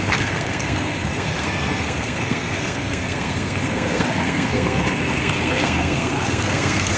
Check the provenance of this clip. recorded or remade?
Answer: remade